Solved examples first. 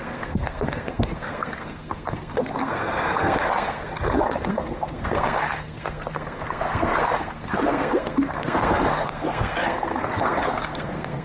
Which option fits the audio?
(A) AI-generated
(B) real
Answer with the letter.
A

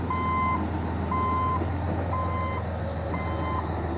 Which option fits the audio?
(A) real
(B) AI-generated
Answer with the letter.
A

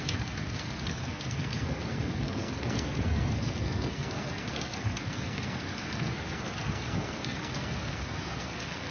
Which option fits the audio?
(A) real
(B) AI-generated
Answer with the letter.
B